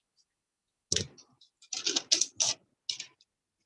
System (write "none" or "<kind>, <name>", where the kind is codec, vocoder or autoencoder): none